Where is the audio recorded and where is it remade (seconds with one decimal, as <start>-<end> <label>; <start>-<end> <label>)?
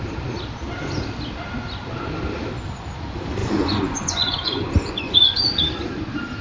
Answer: 0.0-3.4 recorded; 3.4-5.6 remade; 5.6-6.4 recorded